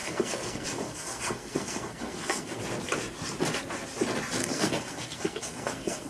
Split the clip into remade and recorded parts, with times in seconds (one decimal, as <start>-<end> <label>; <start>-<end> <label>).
0.0-2.6 remade; 2.6-4.4 recorded; 4.4-6.1 remade